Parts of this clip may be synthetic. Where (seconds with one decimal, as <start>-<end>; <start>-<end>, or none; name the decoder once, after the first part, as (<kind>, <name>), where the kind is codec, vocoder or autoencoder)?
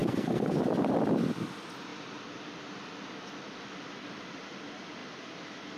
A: 0.0-0.6 (codec, SNAC)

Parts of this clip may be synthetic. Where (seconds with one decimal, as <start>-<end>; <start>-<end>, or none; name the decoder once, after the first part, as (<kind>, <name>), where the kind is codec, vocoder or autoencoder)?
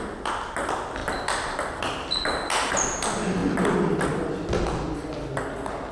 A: none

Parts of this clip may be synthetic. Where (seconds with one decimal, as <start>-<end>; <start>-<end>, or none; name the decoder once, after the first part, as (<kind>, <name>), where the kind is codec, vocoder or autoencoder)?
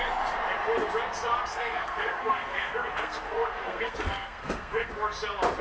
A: 1.5-4.9 (codec, SNAC)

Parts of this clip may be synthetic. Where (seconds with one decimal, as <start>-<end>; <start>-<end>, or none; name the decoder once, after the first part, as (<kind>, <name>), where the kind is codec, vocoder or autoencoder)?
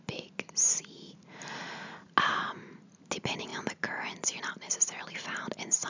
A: none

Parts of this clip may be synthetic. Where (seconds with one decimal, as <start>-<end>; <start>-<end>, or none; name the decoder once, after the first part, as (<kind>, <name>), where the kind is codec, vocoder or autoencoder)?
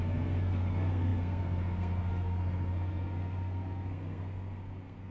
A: 0.0-5.1 (codec, SNAC)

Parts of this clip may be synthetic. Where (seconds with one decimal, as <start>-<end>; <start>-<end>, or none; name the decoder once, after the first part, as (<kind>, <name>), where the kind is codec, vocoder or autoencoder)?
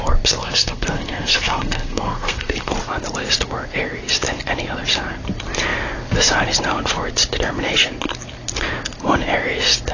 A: 0.4-2.7 (codec, SNAC)